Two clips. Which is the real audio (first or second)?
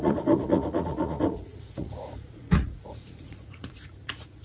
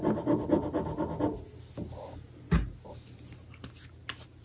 second